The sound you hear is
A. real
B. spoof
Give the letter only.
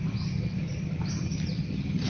A